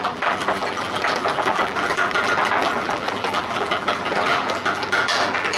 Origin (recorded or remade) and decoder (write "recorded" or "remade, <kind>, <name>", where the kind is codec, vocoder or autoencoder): remade, vocoder, BigVGAN v2